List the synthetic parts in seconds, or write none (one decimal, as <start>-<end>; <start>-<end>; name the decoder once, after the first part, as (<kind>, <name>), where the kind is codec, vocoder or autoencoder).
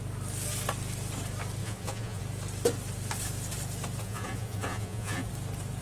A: 1.6-2.2 (vocoder, Vocos); 4.0-5.3